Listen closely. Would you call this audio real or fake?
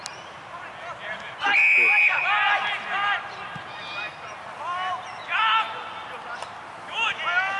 real